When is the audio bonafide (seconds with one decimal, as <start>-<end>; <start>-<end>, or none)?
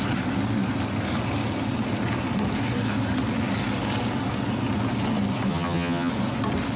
0.0-5.5; 6.1-6.8